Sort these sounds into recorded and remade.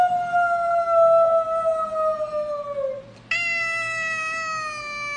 recorded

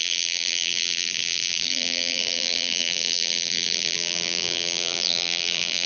remade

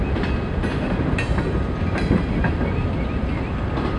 recorded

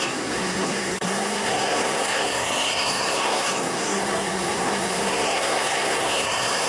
remade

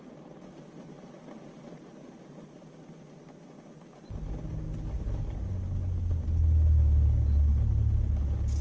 recorded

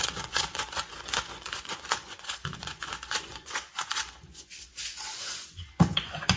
remade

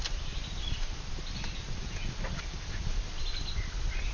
recorded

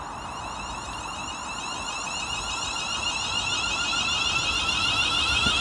recorded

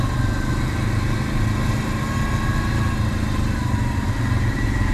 recorded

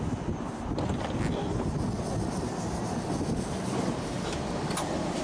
recorded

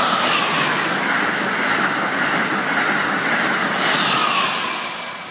recorded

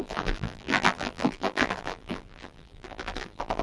remade